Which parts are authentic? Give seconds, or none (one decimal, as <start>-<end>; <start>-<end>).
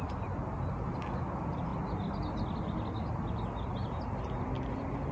0.0-5.1